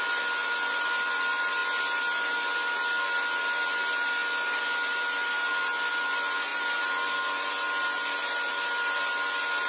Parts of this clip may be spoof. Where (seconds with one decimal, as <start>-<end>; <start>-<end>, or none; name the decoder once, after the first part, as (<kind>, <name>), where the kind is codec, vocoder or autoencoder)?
none